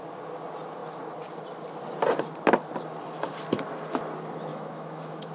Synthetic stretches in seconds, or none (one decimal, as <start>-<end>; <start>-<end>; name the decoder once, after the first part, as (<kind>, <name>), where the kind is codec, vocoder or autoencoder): 4.5-5.3 (autoencoder, DAC-VAE)